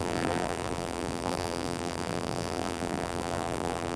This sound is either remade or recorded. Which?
remade